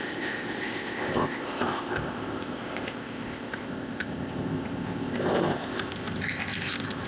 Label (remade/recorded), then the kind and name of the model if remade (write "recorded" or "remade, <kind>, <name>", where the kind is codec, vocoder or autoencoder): remade, codec, ZipCodec